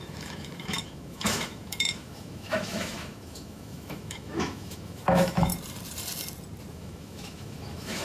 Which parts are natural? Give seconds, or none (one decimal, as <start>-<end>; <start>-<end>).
5.5-6.7